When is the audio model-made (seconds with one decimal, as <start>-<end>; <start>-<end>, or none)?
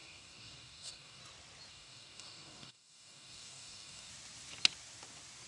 0.0-1.2; 1.7-4.1